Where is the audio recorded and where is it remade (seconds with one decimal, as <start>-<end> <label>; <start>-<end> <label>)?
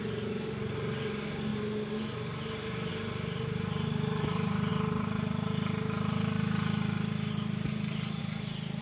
0.0-1.5 remade; 1.5-2.9 recorded; 2.9-8.8 remade